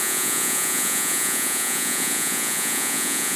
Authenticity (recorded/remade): remade